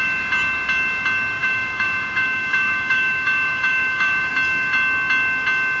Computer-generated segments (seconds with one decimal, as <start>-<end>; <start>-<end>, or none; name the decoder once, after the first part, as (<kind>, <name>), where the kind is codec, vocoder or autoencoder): 1.4-4.3 (autoencoder, DAC-VAE)